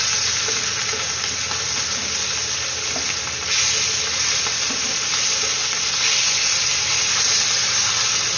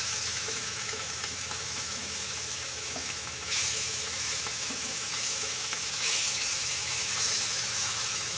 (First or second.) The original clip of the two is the first